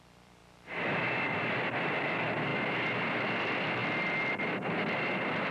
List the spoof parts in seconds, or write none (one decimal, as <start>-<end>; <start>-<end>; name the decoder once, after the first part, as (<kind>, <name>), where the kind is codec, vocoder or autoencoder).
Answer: 0.0-0.4 (vocoder, BigVGAN v2); 1.1-2.5; 3.4-3.8